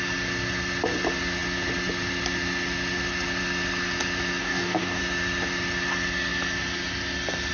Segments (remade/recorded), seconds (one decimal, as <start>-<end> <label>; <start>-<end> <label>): 0.0-4.4 recorded; 4.4-5.0 remade; 5.0-7.5 recorded